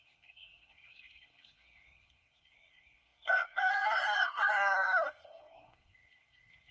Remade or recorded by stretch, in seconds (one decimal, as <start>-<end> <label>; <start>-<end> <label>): 0.0-6.7 remade

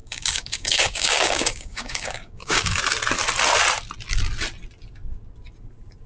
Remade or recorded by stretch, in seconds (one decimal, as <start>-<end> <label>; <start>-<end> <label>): 0.0-2.8 remade; 2.8-6.1 recorded

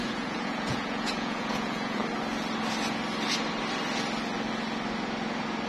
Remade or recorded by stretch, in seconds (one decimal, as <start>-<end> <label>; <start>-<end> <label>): 0.0-2.0 remade; 2.0-5.7 recorded